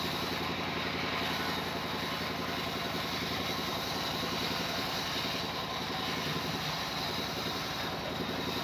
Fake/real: real